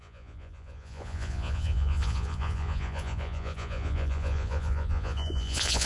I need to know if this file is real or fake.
fake